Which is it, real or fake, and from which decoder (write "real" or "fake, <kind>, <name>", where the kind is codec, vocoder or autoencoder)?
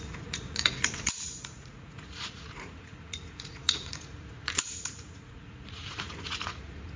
fake, vocoder, Vocos